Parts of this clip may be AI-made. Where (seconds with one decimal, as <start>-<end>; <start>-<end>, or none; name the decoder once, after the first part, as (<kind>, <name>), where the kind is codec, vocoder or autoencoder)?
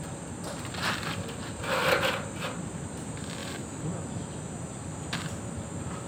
none